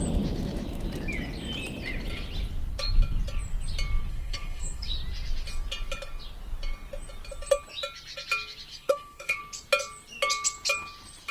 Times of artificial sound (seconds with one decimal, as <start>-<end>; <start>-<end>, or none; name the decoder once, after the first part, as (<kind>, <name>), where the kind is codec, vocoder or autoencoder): 4.1-4.9 (codec, SNAC); 8.7-9.4